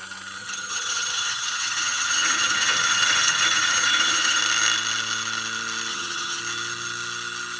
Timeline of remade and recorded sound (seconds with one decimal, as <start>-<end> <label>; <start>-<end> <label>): 0.0-0.4 recorded; 0.4-4.4 remade; 4.4-5.9 recorded; 5.9-6.4 remade; 6.4-7.6 recorded